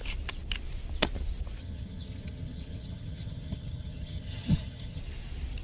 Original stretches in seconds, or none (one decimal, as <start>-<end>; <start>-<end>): 0.0-1.6; 5.0-5.6